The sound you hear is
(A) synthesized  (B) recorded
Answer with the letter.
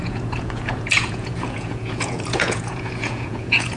A